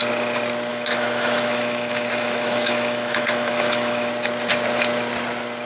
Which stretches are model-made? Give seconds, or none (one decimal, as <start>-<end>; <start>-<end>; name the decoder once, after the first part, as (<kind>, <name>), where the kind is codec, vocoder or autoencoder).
0.7-4.1 (autoencoder, DAC-VAE)